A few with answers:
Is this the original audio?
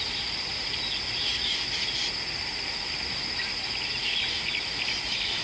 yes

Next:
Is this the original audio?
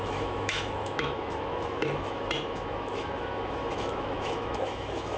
no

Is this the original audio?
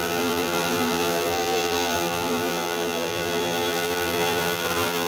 no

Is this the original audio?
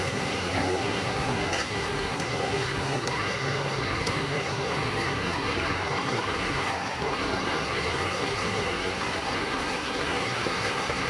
no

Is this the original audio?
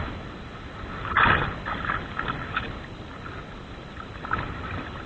yes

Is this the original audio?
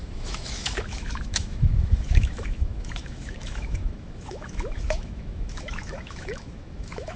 no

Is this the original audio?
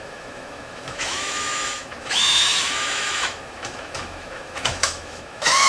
no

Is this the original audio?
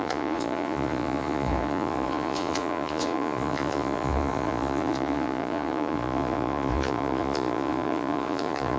no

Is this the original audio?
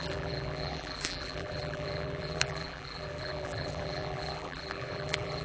no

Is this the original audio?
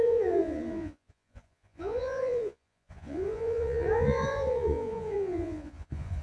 no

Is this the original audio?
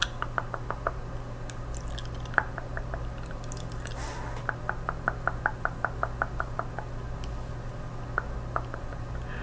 yes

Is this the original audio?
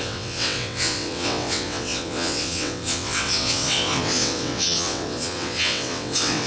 no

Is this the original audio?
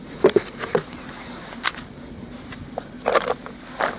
yes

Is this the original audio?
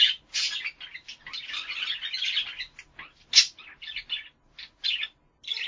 yes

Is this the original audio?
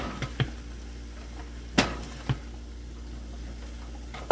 yes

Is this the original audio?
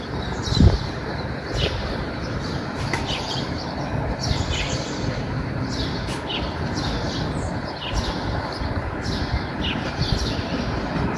yes